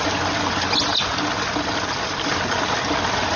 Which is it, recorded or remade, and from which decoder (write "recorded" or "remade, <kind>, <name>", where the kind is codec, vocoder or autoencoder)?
recorded